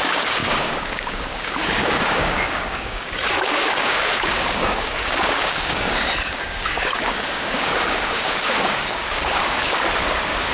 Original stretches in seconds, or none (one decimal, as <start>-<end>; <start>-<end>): none